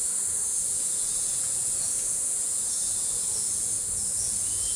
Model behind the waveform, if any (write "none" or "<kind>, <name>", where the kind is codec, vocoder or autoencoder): vocoder, Vocos